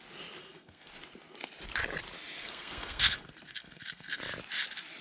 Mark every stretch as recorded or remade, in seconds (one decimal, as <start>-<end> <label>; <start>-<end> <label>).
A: 0.0-0.4 recorded; 0.4-0.9 remade; 0.9-2.4 recorded; 2.4-4.2 remade; 4.2-5.0 recorded